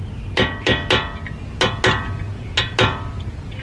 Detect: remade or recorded recorded